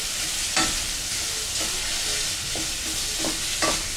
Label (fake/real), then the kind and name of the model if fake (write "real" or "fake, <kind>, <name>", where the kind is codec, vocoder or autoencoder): real